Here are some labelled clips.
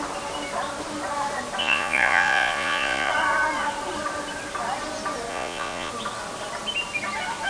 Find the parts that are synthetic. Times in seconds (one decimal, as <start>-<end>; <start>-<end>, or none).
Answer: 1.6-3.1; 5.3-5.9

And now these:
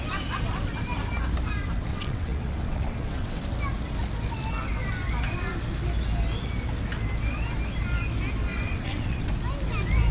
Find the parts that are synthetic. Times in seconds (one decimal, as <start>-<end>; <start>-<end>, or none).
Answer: 1.9-3.4; 8.5-9.3

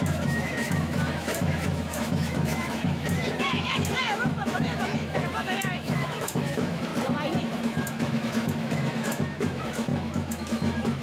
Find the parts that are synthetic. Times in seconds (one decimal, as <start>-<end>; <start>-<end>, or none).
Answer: 0.0-6.9; 7.4-11.0

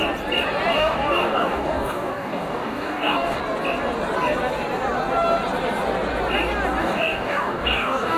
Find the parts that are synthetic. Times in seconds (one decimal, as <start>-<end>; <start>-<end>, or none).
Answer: 0.8-3.4; 6.8-8.2